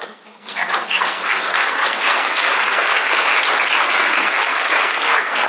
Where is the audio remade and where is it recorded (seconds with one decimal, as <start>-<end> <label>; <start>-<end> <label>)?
0.0-3.3 remade; 3.3-3.8 recorded; 3.8-5.5 remade